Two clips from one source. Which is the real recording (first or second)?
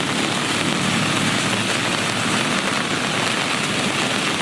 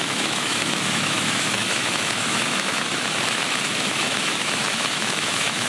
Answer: first